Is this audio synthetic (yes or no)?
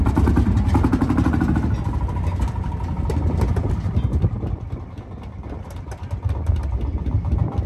no